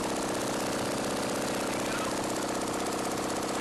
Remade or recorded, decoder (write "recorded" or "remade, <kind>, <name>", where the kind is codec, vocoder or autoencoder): recorded